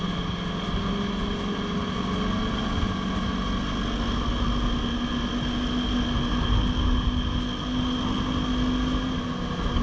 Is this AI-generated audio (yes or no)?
no